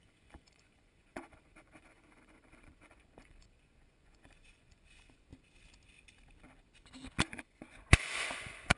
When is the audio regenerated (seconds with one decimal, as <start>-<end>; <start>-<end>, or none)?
0.0-5.3; 7.2-8.8